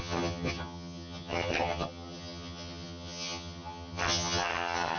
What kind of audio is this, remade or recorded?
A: remade